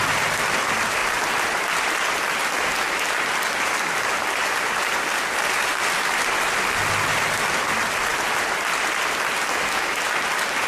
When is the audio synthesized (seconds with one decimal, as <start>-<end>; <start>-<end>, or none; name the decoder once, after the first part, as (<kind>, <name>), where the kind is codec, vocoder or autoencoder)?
none